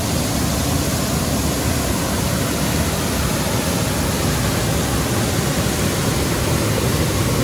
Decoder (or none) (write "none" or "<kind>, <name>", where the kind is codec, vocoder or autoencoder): none